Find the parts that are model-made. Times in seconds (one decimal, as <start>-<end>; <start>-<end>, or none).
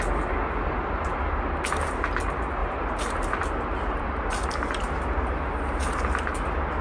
2.6-4.9